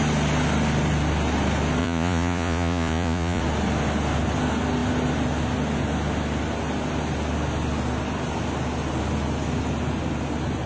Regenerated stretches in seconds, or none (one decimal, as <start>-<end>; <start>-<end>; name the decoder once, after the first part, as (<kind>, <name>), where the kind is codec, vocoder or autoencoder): 1.8-3.4 (vocoder, Vocos)